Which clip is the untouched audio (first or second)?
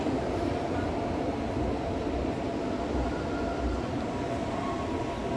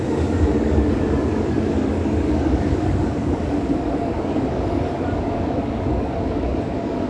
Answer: first